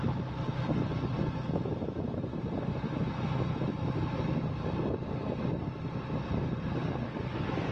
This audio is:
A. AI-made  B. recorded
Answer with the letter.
B